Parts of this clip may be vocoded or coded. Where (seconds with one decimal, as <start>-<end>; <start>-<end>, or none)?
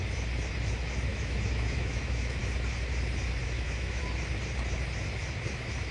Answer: 1.1-2.4; 3.4-4.0